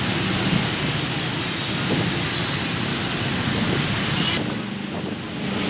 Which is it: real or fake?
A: real